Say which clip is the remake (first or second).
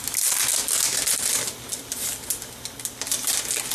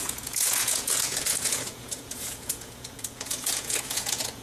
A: second